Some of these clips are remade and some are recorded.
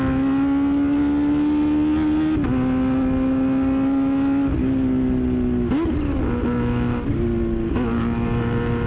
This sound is recorded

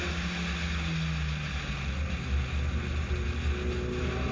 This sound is recorded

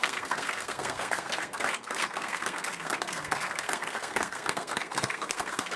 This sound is remade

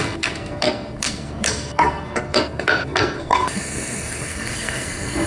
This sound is remade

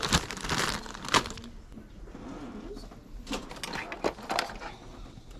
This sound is recorded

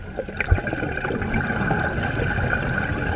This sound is recorded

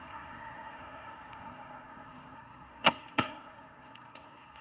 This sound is remade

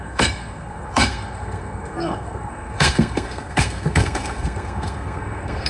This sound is remade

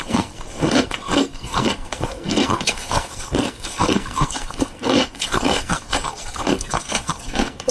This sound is remade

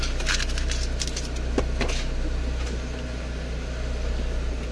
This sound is recorded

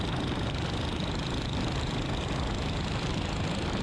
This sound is recorded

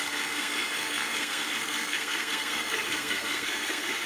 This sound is remade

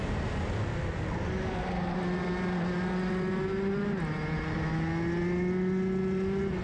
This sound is recorded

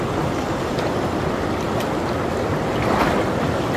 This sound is recorded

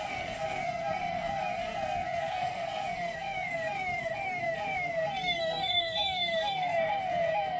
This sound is remade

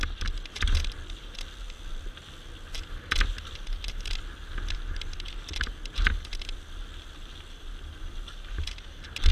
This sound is recorded